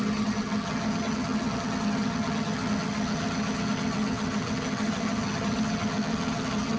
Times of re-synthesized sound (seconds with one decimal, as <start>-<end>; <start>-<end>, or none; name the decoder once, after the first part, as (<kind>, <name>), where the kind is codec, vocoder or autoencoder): 0.0-6.8 (vocoder, HiFi-GAN)